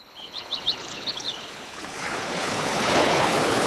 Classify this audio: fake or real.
fake